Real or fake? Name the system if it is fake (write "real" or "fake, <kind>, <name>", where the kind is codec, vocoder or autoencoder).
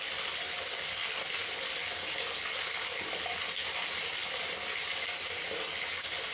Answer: real